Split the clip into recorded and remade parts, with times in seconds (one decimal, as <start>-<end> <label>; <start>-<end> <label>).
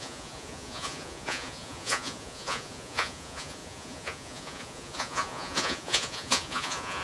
0.0-7.0 remade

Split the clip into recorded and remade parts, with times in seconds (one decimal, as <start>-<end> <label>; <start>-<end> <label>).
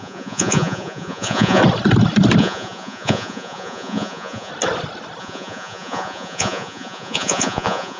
0.0-1.6 remade; 1.6-2.4 recorded; 2.4-4.5 remade; 4.5-5.2 recorded; 5.2-8.0 remade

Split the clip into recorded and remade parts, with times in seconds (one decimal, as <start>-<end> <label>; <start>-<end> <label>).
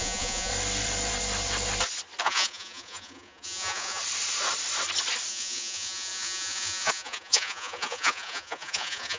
0.0-0.5 remade; 0.5-2.2 recorded; 2.2-4.0 remade; 4.0-5.3 recorded; 5.3-9.2 remade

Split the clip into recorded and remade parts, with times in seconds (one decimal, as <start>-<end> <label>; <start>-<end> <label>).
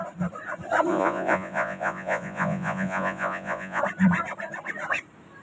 0.0-0.9 recorded; 0.9-3.8 remade; 3.8-5.4 recorded